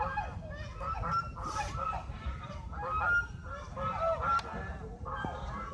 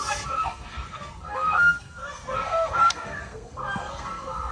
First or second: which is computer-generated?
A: second